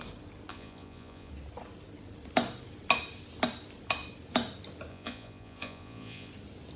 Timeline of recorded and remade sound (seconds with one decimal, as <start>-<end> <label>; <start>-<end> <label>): 0.0-0.5 recorded; 0.5-1.3 remade; 1.3-4.9 recorded; 4.9-6.3 remade; 6.3-6.8 recorded